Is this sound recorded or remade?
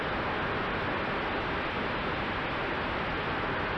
recorded